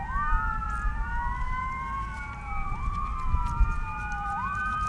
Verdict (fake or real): fake